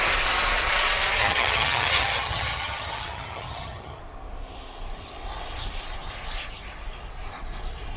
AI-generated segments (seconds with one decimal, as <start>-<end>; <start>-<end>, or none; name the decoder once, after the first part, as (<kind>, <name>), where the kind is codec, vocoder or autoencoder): 1.2-4.0 (vocoder, HiFi-GAN)